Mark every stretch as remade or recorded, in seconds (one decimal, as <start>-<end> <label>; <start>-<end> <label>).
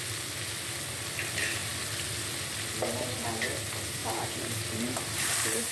0.0-4.0 recorded; 4.0-5.7 remade